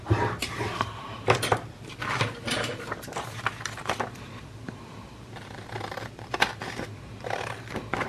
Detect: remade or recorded remade